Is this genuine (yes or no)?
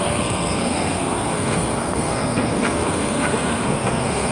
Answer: no